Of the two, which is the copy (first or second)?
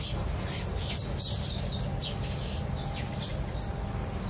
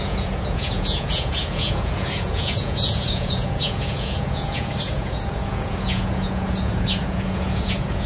second